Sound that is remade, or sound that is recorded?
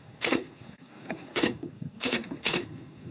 remade